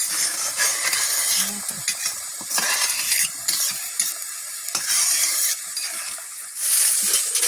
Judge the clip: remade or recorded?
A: recorded